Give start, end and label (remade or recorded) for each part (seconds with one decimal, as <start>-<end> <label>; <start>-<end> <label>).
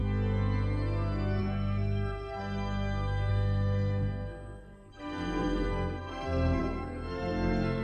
0.0-1.4 recorded; 1.4-2.4 remade; 2.4-3.3 recorded; 3.3-7.8 remade